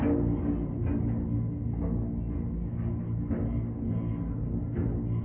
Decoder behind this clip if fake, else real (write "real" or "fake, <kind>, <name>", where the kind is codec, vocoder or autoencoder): real